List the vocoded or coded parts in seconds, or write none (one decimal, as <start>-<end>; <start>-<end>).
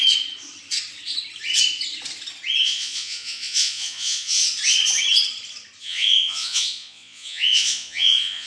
2.6-4.4; 5.8-8.5